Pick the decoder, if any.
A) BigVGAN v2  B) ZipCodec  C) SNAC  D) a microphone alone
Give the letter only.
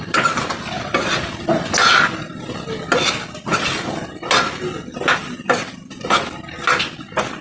D